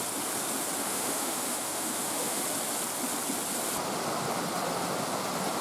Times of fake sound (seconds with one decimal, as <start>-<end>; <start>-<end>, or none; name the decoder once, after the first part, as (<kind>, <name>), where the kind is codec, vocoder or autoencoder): 0.8-2.4 (autoencoder, DAC-VAE)